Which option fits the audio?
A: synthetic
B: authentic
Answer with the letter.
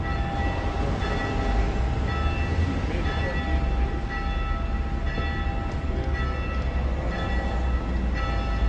B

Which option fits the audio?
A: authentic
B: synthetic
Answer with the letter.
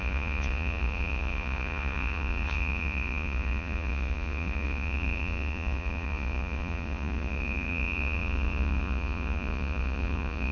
B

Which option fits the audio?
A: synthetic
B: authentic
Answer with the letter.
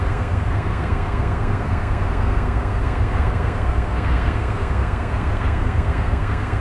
A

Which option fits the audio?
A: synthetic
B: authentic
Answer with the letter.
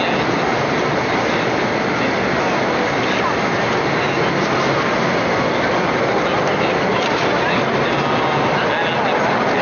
B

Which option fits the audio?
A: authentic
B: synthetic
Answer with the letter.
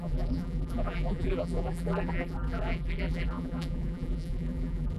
B